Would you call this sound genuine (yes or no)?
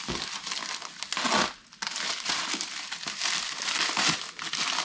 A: yes